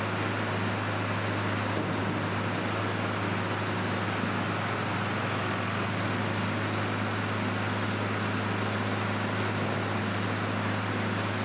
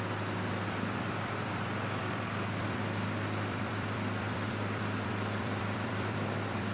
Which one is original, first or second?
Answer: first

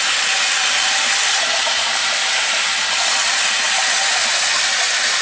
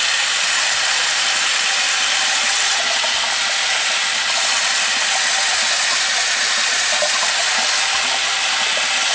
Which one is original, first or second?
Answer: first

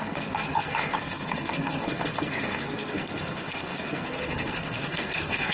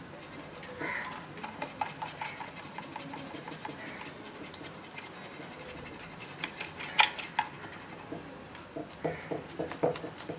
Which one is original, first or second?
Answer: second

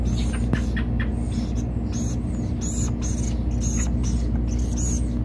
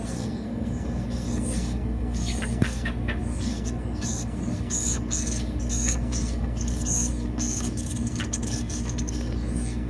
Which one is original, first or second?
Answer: first